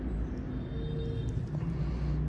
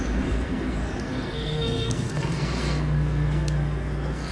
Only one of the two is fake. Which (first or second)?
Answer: second